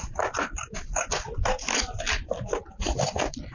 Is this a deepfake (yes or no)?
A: no